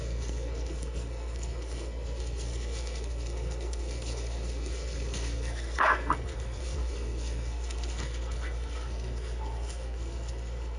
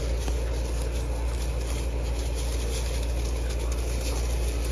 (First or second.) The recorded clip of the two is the second